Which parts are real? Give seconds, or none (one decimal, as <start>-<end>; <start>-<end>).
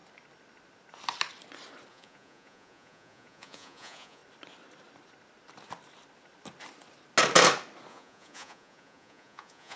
0.0-1.9; 4.2-7.9